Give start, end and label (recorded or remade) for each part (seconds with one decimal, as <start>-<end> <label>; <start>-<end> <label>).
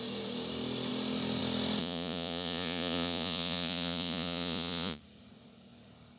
0.0-1.8 recorded; 1.8-5.0 remade; 5.0-6.2 recorded